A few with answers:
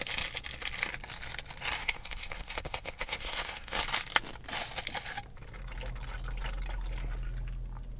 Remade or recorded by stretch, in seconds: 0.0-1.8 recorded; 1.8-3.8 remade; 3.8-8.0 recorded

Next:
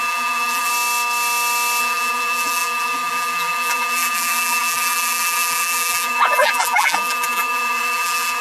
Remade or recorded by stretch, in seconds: 0.0-0.7 remade; 0.7-1.8 recorded; 1.8-8.4 remade

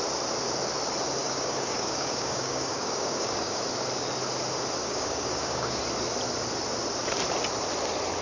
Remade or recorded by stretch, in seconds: 0.0-1.2 recorded; 1.2-3.6 remade; 3.6-4.8 recorded; 4.8-5.8 remade; 5.8-8.2 recorded

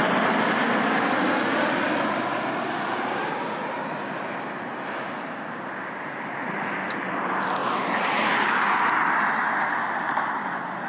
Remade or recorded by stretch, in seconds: 0.0-10.9 recorded

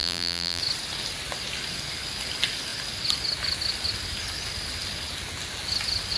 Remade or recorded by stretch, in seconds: 0.0-0.6 remade; 0.6-6.2 recorded

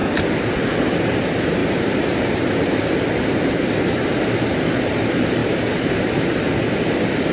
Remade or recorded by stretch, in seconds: 0.0-1.6 recorded; 1.6-4.4 remade; 4.4-5.4 recorded; 5.4-6.4 remade; 6.4-7.3 recorded

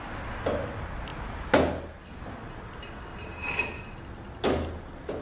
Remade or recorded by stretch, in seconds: 0.0-5.2 recorded

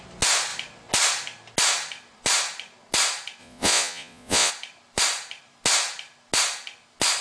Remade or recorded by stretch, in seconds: 0.0-3.4 recorded; 3.4-4.5 remade; 4.5-7.2 recorded